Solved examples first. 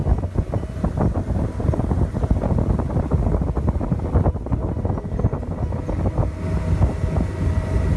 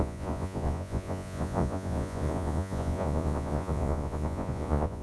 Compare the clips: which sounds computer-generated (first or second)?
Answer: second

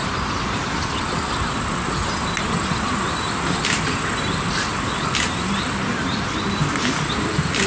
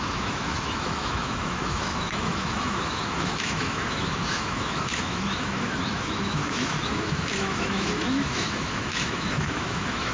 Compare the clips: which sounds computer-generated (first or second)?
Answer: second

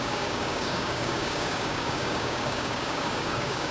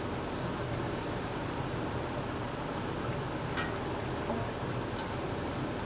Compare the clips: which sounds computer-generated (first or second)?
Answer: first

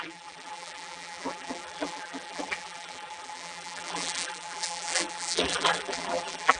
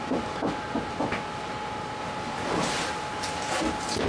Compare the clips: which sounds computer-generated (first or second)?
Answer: first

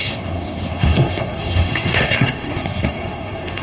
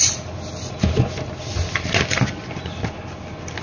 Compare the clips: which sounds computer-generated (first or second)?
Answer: first